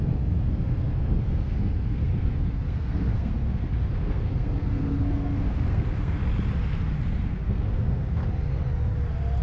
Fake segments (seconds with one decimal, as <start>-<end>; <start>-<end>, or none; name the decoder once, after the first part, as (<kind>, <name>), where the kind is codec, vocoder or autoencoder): 0.0-6.2 (codec, SNAC); 7.1-8.2